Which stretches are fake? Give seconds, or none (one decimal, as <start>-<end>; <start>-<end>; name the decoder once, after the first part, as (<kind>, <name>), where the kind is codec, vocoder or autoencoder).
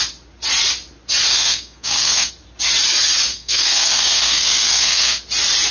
1.3-2.3 (codec, SNAC); 3.3-5.2